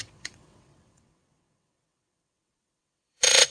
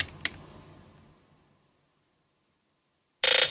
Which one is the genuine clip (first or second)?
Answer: second